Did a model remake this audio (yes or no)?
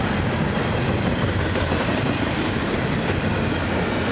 no